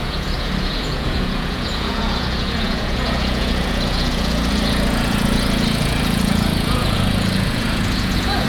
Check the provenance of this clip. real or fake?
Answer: fake